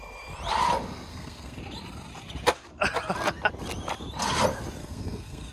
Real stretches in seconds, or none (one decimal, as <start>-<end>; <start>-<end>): 0.0-1.1; 1.6-4.8